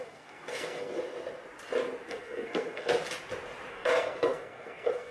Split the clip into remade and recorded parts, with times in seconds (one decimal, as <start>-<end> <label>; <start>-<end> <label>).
0.0-1.0 remade; 1.0-2.1 recorded; 2.1-2.9 remade; 2.9-3.7 recorded; 3.7-5.1 remade

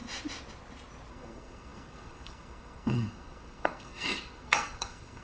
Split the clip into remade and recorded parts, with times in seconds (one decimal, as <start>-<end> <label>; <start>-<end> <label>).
0.0-1.1 recorded; 1.1-5.2 remade

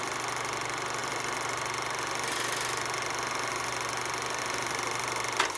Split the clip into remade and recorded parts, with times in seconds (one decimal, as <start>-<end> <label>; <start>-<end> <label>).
0.0-5.6 recorded

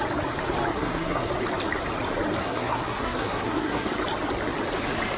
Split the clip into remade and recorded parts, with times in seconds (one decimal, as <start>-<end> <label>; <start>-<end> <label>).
0.0-0.7 recorded; 0.7-1.3 remade; 1.3-2.4 recorded; 2.4-4.0 remade; 4.0-5.2 recorded

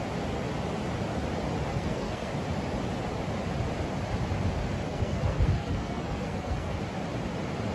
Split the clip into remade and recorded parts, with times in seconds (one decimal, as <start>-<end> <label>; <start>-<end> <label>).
0.0-1.7 recorded; 1.7-2.3 remade; 2.3-4.9 recorded; 4.9-6.8 remade; 6.8-7.7 recorded

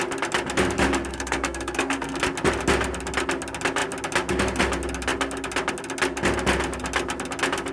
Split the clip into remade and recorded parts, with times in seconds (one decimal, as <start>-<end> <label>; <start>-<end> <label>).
0.0-1.1 recorded; 1.1-2.2 remade; 2.2-7.7 recorded

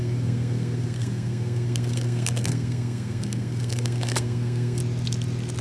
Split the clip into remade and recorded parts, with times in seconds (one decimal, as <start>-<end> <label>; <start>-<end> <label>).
0.0-4.8 remade; 4.8-5.6 recorded

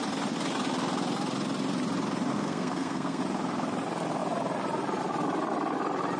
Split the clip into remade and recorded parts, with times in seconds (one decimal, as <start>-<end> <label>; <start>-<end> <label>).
0.0-2.3 recorded; 2.3-3.2 remade; 3.2-6.2 recorded